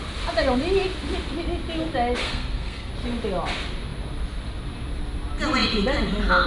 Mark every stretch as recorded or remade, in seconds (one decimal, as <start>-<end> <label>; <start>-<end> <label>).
0.0-2.2 recorded; 2.2-2.9 remade; 2.9-6.5 recorded